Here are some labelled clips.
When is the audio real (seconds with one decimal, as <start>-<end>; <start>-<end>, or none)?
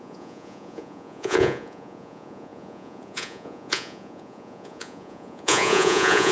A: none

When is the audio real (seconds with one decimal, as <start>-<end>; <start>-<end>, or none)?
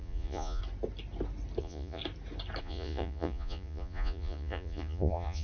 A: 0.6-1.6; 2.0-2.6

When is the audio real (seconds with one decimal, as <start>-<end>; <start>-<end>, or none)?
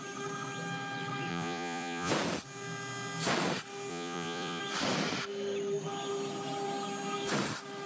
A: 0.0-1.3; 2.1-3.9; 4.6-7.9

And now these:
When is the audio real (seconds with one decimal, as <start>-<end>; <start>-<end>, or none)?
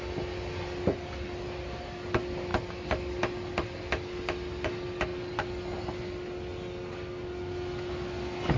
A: 0.0-8.6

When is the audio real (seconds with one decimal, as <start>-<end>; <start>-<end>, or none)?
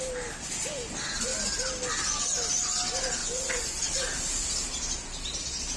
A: 0.0-3.2; 3.8-5.8